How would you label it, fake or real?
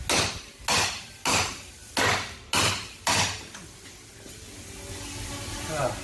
real